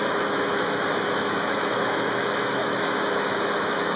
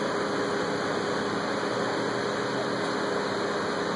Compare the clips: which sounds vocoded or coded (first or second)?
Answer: first